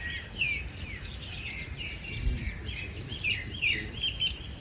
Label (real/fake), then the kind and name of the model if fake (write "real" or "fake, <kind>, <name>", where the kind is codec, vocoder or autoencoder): real